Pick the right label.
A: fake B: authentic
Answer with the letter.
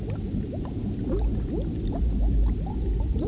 B